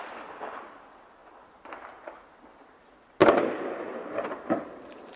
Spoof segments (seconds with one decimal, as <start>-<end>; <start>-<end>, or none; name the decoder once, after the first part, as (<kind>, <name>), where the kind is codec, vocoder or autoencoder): 1.2-2.3 (vocoder, BigVGAN v2); 3.2-5.2